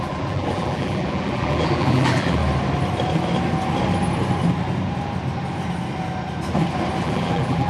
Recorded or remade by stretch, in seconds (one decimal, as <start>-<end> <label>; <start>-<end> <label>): 0.0-2.4 remade; 2.4-7.0 recorded; 7.0-7.7 remade